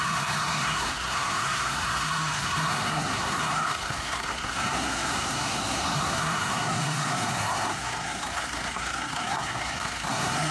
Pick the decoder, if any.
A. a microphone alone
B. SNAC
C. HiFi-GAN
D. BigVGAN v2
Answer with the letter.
B